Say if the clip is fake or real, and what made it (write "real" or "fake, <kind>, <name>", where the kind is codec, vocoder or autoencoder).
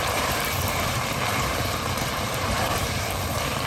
fake, vocoder, BigVGAN v2